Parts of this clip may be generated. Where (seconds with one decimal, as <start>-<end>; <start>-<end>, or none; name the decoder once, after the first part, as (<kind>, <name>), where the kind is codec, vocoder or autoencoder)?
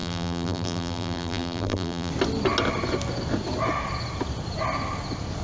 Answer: 0.0-2.1 (vocoder, BigVGAN v2)